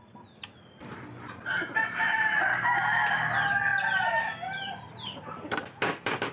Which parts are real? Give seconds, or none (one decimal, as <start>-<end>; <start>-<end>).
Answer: 0.0-6.3